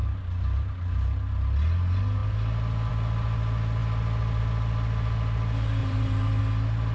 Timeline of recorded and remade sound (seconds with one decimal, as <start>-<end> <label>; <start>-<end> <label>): 0.0-5.8 recorded; 5.8-6.4 remade; 6.4-6.9 recorded